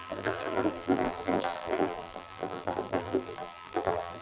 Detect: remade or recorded remade